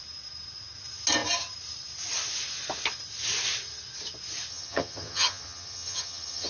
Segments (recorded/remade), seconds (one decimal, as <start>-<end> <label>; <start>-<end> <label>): 0.0-4.5 recorded; 4.5-6.5 remade

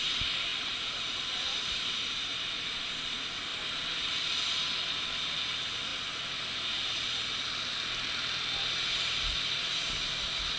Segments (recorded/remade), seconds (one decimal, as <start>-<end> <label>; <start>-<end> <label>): 0.0-0.5 recorded; 0.5-2.9 remade; 2.9-10.6 recorded